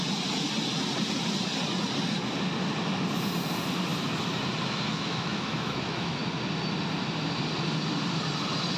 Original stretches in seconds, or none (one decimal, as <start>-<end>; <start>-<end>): 0.0-4.9; 6.2-8.8